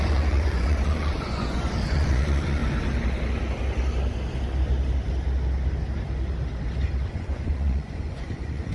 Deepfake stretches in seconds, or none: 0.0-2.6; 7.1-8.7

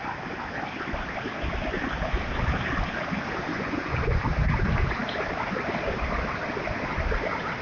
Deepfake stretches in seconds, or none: 3.5-4.2

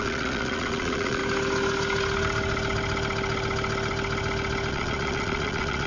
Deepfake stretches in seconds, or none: 0.0-1.2; 4.7-5.9

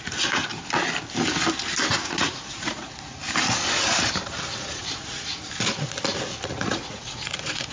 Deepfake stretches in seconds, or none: 0.0-0.4; 2.0-3.2; 4.7-5.3; 6.6-7.7

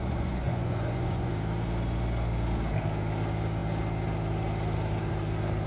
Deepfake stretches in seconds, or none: 0.0-1.3